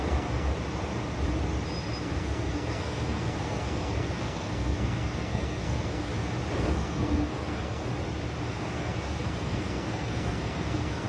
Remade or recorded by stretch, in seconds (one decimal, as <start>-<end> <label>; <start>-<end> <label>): 0.0-0.5 remade; 0.5-2.0 recorded; 2.0-6.1 remade; 6.1-6.6 recorded; 6.6-7.9 remade; 7.9-8.5 recorded; 8.5-11.1 remade